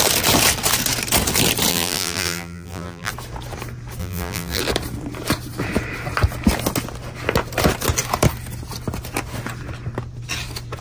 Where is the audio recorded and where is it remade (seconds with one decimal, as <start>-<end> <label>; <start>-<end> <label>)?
0.0-1.7 recorded; 1.7-3.1 remade; 3.1-4.0 recorded; 4.0-4.6 remade; 4.6-10.8 recorded